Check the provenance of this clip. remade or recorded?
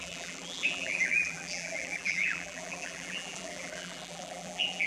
remade